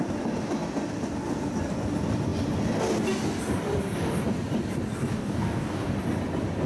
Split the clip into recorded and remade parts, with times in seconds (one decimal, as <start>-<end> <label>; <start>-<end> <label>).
0.0-5.1 recorded; 5.1-5.9 remade; 5.9-6.7 recorded